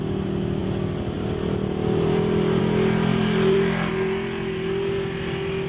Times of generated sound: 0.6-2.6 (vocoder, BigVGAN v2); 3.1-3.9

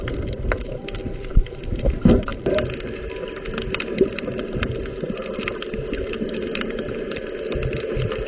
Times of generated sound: 0.0-2.3 (vocoder, BigVGAN v2); 4.4-7.2

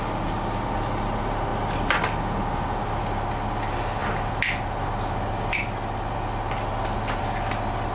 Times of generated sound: none

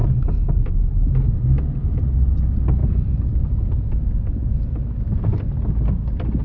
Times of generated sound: 0.0-1.3 (vocoder, BigVGAN v2); 2.8-3.4

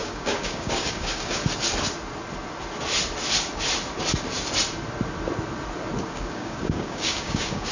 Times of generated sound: 0.0-1.4 (codec, DAC); 6.0-7.7

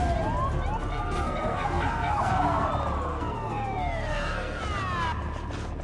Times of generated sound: 0.9-2.7 (codec, SNAC); 3.1-4.6

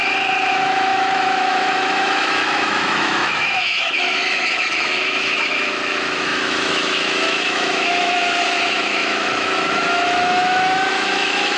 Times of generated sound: 0.5-11.6 (autoencoder, DAC-VAE)